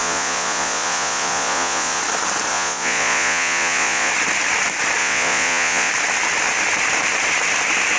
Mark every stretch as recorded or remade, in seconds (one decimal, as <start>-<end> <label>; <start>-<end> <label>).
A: 0.0-2.0 remade; 2.0-2.5 recorded; 2.5-4.1 remade; 4.1-5.0 recorded; 5.0-5.9 remade; 5.9-8.0 recorded